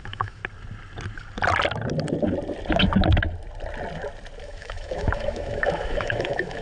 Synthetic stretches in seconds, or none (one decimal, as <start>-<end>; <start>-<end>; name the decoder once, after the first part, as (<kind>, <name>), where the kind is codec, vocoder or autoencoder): 0.0-0.4 (autoencoder, DAC-VAE); 4.4-6.6

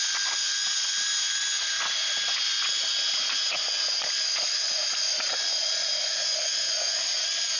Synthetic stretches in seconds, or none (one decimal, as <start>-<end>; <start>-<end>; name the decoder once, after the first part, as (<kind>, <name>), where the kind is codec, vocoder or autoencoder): none

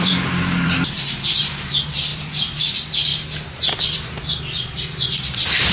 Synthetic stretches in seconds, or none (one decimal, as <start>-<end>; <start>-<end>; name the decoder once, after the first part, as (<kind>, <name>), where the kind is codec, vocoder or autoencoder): 0.0-3.1 (vocoder, BigVGAN v2); 3.8-5.7

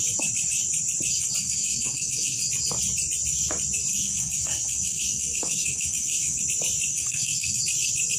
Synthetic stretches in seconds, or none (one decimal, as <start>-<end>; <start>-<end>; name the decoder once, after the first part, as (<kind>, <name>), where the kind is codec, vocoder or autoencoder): 1.4-2.4 (codec, SNAC); 3.9-6.4; 6.9-7.6

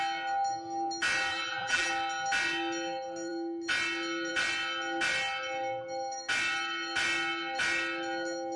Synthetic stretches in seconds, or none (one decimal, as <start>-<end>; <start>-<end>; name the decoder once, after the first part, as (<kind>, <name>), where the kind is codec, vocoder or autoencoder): 1.3-1.9 (vocoder, BigVGAN v2)

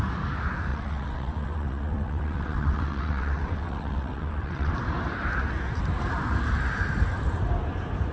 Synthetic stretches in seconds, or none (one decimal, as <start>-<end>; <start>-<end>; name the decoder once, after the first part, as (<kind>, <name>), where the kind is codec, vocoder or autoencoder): 0.7-4.7 (vocoder, WaveNeXt)

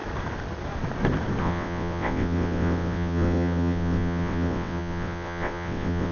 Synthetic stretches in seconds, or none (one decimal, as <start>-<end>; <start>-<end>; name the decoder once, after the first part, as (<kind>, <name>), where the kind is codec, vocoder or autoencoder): 1.4-6.1 (vocoder, WaveNeXt)

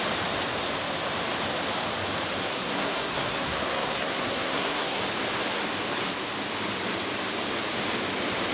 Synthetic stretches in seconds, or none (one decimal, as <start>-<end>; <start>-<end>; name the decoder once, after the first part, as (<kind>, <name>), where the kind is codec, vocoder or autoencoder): 2.4-5.0 (codec, SNAC)